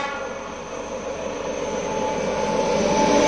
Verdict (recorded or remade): recorded